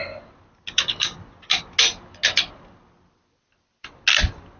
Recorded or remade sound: recorded